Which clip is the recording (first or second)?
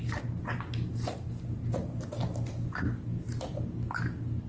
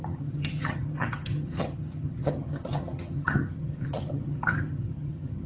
first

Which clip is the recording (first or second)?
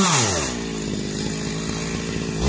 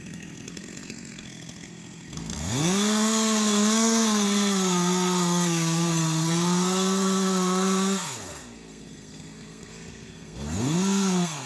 first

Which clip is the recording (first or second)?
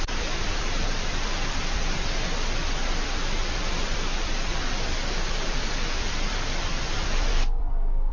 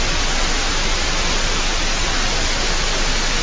second